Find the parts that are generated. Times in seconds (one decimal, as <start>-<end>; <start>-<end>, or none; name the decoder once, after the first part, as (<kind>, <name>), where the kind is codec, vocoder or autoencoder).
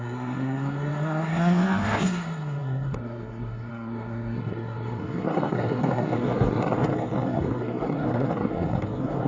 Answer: 0.0-9.3 (codec, SNAC)